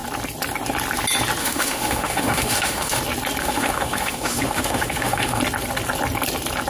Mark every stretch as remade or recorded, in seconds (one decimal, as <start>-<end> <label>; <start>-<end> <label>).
0.0-1.4 recorded; 1.4-3.0 remade; 3.0-3.4 recorded; 3.4-5.4 remade; 5.4-6.7 recorded